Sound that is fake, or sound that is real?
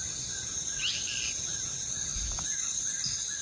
real